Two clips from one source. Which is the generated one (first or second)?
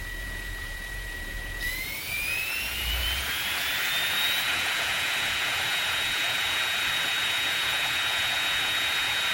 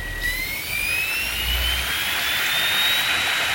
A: first